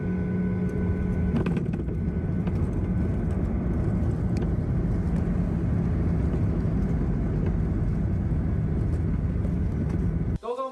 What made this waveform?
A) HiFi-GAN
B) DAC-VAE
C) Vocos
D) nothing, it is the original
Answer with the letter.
D